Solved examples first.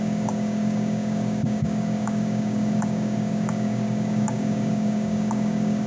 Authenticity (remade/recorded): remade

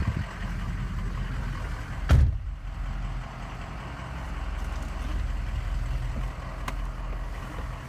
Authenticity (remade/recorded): recorded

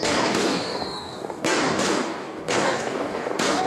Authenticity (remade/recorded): remade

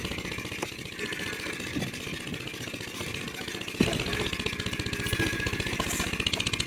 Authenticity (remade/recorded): recorded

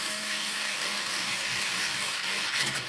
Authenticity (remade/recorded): remade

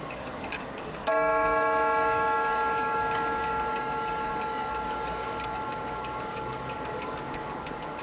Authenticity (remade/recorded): remade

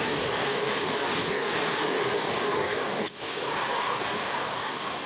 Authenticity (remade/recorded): remade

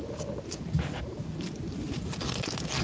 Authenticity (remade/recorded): recorded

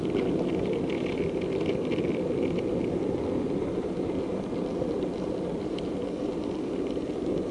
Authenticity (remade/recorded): recorded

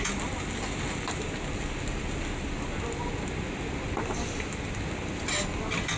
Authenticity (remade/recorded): recorded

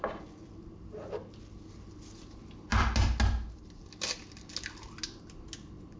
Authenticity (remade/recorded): recorded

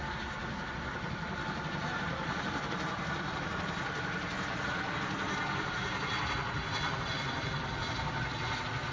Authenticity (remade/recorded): recorded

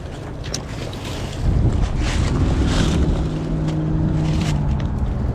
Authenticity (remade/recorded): recorded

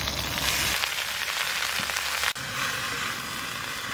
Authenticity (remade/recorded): recorded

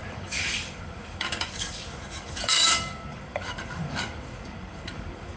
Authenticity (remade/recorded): remade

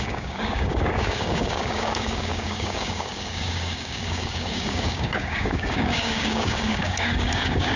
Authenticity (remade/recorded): remade